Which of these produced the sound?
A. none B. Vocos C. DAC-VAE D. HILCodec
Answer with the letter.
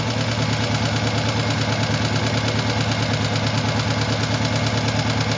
A